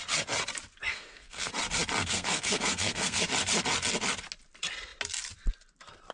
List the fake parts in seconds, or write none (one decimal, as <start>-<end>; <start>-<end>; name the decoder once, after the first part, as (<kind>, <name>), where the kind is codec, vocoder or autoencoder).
0.9-1.5 (codec, SNAC); 2.0-3.2